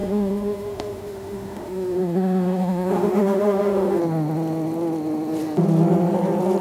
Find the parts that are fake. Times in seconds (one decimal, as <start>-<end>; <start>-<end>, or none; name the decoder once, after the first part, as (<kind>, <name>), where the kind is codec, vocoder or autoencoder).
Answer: 0.0-4.0 (autoencoder, DAC-VAE)